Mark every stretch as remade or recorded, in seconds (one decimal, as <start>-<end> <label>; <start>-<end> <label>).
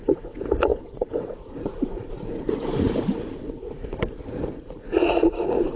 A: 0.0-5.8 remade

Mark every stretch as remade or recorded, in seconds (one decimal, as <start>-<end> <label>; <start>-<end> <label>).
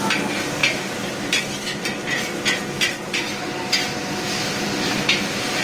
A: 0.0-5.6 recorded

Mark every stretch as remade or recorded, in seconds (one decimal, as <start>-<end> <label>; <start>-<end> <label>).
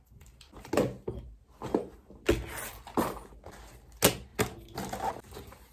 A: 0.0-5.7 recorded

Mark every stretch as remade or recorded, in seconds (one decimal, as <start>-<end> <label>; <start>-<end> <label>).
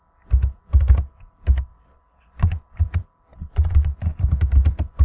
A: 0.0-1.7 recorded; 1.7-2.8 remade; 2.8-3.3 recorded; 3.3-4.2 remade; 4.2-5.0 recorded